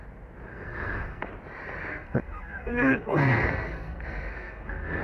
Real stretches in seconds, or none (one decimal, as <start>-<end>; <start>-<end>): 0.0-0.5; 1.3-1.9